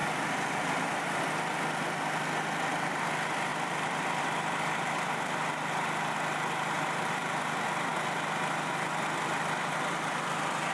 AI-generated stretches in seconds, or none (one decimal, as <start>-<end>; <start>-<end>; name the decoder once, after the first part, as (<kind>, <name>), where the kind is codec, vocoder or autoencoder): 0.0-1.2 (vocoder, BigVGAN v2); 3.5-4.2